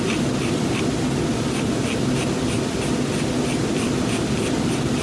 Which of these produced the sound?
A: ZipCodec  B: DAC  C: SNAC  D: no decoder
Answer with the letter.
D